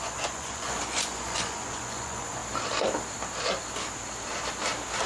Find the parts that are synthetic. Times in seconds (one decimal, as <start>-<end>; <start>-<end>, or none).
0.0-2.4